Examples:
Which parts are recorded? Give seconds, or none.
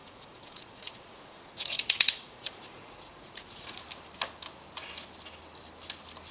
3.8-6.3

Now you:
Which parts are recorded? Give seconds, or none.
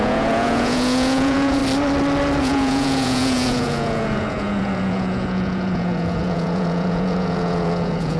1.6-2.4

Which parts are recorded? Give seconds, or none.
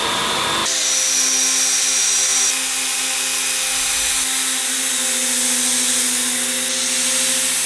0.0-7.7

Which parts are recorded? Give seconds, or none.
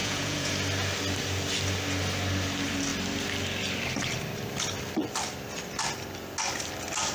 0.5-7.1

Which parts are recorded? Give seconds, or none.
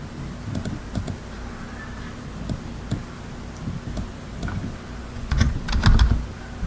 0.0-5.0; 5.5-6.7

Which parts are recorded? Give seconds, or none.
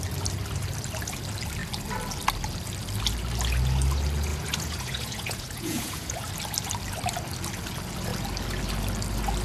0.0-4.3; 6.3-9.4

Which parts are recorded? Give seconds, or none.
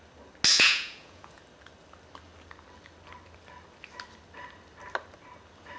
0.0-0.5; 1.4-5.8